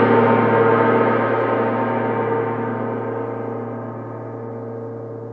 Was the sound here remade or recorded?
recorded